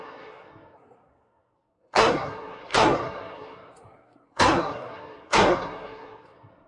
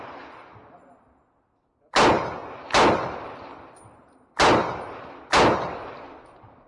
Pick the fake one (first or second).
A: first